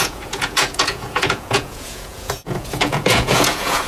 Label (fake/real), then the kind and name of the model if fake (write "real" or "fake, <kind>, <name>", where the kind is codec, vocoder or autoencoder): fake, vocoder, Vocos